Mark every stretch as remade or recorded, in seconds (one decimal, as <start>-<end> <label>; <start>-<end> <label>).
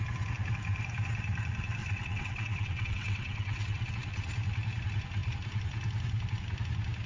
0.0-1.8 recorded; 1.8-3.9 remade; 3.9-7.1 recorded